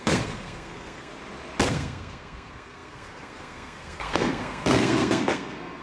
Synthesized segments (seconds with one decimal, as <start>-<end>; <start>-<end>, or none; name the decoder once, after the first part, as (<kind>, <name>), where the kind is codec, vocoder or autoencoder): 0.0-1.1 (codec, SNAC); 1.7-5.8